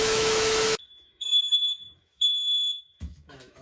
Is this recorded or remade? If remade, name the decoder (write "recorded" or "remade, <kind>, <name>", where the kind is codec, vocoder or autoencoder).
remade, autoencoder, DAC-VAE